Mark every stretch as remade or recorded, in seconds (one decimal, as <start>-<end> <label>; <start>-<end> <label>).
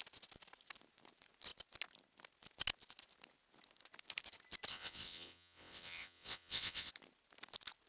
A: 0.0-4.7 recorded; 4.7-6.9 remade; 6.9-7.9 recorded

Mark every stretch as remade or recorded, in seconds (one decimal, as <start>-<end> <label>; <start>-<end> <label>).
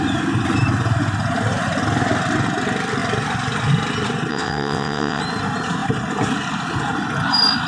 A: 0.0-4.3 recorded; 4.3-5.2 remade; 5.2-7.7 recorded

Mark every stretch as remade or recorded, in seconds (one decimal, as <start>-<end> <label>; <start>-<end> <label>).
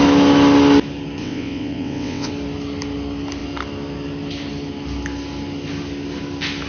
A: 0.0-1.2 recorded; 1.2-2.3 remade; 2.3-6.7 recorded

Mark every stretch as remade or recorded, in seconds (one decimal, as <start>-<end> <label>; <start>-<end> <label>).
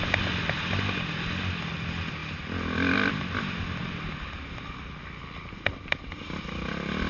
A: 0.0-7.1 recorded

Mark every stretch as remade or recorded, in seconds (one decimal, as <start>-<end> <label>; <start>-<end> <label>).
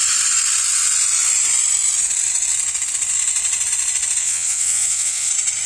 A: 0.0-4.2 recorded; 4.2-5.3 remade; 5.3-5.7 recorded